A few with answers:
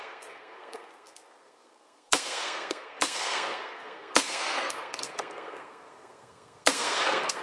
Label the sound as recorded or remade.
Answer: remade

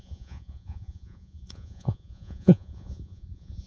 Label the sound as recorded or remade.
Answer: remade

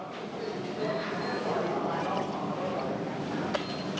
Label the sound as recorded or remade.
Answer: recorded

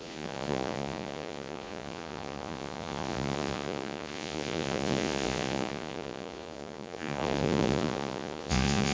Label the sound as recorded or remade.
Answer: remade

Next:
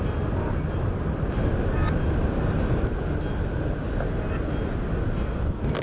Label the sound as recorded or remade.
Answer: recorded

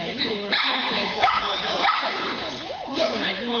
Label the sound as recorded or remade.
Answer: remade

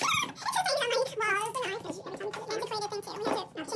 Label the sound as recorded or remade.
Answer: recorded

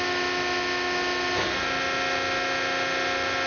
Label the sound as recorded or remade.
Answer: recorded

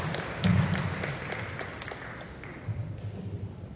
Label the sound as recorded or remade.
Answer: remade